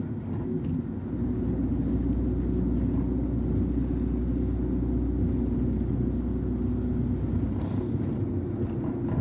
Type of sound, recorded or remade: recorded